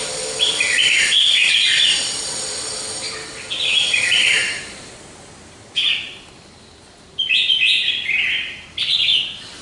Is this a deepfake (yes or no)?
yes